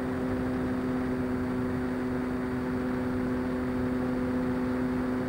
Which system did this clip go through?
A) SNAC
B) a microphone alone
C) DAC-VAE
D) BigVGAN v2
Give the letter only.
B